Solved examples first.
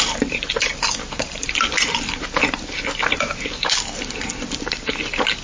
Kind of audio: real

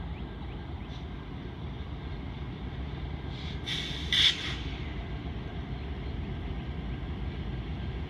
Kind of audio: real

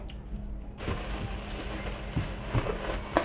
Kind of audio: real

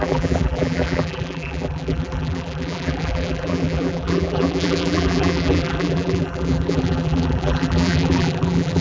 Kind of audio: fake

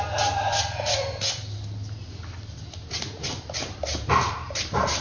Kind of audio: real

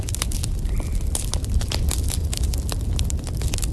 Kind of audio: fake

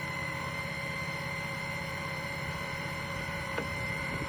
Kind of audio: fake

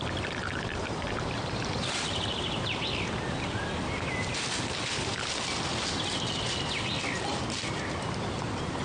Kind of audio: fake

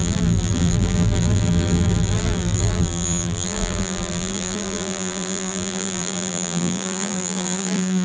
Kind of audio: fake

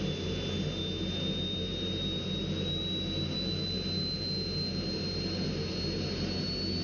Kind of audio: real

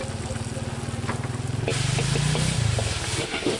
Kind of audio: real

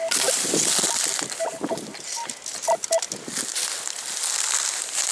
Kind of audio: real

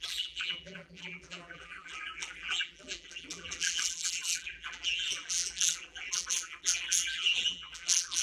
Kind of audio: fake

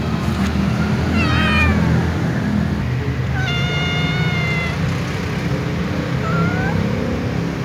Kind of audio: real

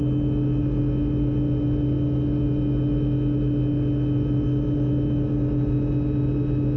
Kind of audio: real